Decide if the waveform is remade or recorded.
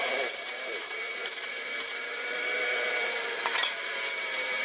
remade